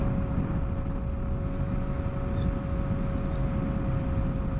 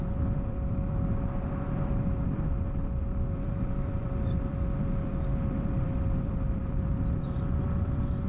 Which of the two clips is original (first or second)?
first